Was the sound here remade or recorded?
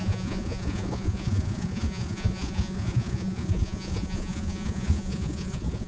remade